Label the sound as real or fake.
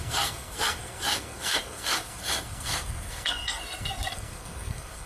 fake